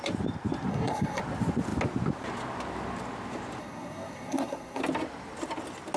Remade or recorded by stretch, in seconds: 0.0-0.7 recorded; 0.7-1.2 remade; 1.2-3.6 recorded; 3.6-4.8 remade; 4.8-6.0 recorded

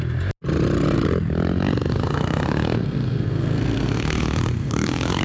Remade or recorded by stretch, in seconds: 0.0-1.9 recorded; 1.9-5.2 remade